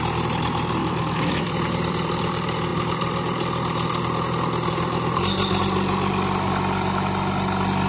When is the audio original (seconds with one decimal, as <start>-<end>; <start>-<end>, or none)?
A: 0.0-0.8; 1.5-7.9